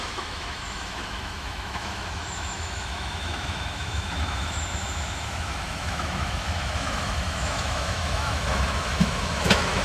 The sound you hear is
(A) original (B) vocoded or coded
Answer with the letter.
B